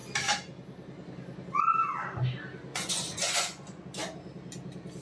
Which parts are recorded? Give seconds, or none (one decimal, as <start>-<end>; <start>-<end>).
0.0-2.7; 3.8-5.0